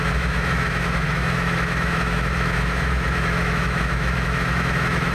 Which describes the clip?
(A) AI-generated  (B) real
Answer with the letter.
A